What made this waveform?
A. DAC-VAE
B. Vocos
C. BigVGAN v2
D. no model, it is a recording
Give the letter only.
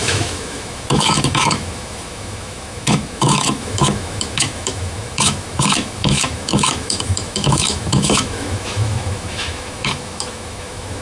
A